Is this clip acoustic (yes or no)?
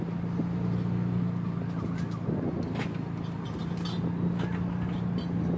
yes